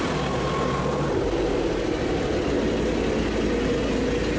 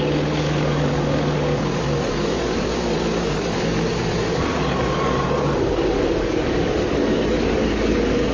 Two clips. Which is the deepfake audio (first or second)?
second